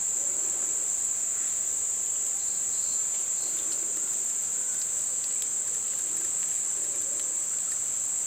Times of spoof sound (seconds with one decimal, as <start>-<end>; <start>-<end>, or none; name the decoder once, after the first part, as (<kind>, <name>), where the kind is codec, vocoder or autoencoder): 2.3-4.0 (vocoder, BigVGAN v2)